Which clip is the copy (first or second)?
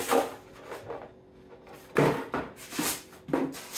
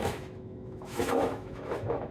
second